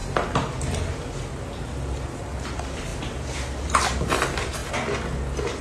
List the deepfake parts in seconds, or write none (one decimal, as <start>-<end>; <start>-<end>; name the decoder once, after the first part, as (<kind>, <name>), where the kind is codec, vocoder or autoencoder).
2.2-2.9 (vocoder, BigVGAN v2); 3.6-4.6